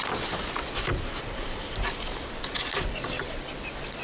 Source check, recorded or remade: recorded